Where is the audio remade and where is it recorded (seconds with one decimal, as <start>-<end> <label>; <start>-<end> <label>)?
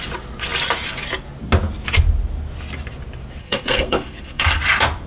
0.0-3.4 recorded; 3.4-4.6 remade; 4.6-5.1 recorded